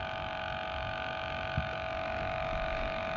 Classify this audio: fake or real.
fake